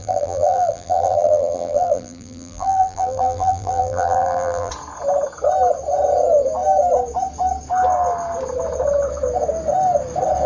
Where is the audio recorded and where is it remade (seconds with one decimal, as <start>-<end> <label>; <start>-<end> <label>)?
0.0-4.7 remade; 4.7-10.5 recorded